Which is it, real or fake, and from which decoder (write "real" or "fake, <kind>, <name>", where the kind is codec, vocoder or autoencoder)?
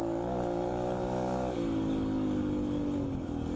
fake, codec, DAC